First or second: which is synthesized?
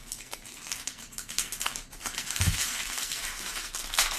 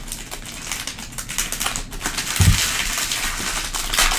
first